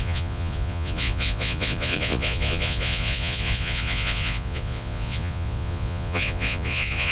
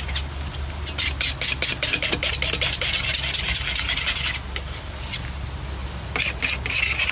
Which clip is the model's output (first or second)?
first